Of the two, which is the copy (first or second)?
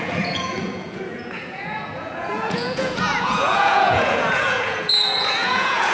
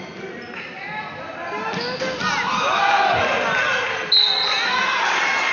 first